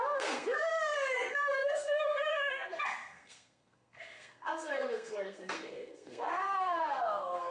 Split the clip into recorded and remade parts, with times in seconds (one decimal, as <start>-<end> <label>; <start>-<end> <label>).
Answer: 0.0-7.5 remade